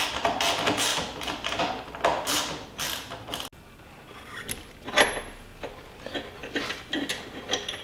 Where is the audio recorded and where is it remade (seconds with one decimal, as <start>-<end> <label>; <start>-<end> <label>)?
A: 0.0-7.8 recorded